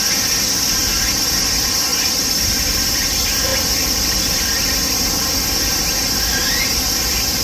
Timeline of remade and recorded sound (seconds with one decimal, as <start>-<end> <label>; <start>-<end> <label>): 0.0-0.9 recorded; 0.9-1.4 remade; 1.4-1.9 recorded; 1.9-2.8 remade; 2.8-7.4 recorded